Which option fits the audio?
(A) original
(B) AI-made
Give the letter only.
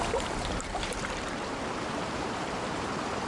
B